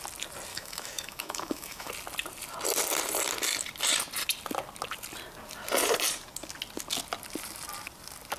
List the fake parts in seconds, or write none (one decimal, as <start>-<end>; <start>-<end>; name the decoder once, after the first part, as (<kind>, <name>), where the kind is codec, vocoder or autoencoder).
0.5-1.9 (autoencoder, DAC-VAE)